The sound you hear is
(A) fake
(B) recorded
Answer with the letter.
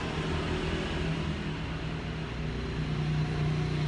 B